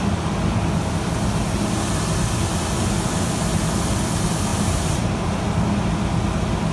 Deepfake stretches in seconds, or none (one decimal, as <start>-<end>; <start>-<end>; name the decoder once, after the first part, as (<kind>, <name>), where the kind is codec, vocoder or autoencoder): 4.5-5.3 (vocoder, BigVGAN v2)